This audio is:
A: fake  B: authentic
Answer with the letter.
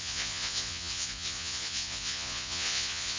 A